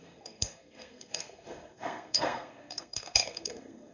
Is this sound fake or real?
fake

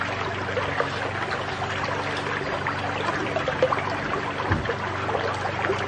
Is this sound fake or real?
real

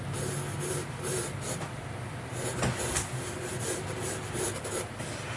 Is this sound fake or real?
real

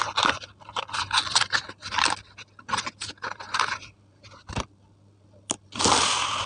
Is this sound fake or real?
real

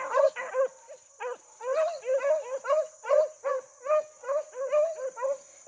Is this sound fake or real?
real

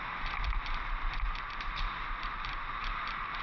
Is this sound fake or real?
real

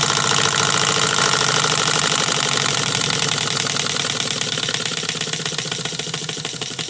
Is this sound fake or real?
real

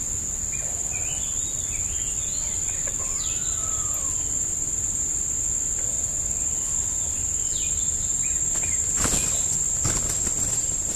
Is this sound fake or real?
real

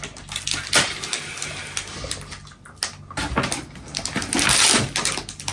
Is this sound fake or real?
real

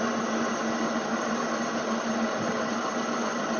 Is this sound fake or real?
real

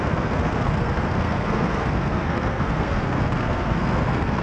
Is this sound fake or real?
fake